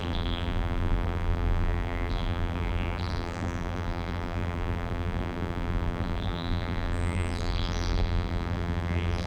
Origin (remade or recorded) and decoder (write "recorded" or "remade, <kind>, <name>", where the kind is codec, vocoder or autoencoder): remade, vocoder, BigVGAN v2